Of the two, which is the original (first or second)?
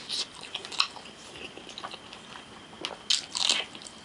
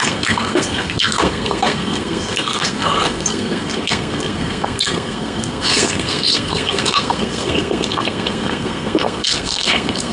first